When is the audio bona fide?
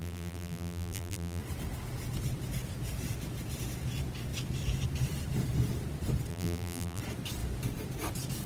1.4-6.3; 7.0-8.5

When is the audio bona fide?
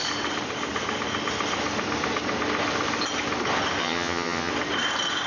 0.0-3.8; 4.5-5.3